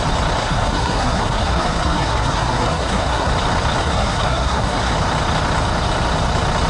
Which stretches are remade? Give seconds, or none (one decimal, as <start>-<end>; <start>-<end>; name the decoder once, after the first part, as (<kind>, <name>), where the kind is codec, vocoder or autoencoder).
0.4-3.3 (codec, SNAC); 3.8-4.9